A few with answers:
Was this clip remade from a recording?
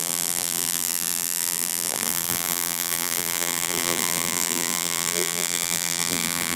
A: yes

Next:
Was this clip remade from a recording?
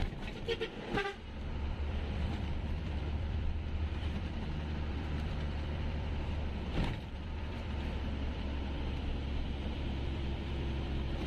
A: yes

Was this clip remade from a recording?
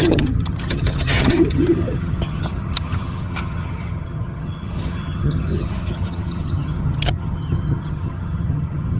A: yes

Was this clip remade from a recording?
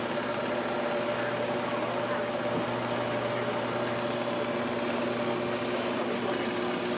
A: no